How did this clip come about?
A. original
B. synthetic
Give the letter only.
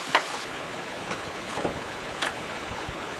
B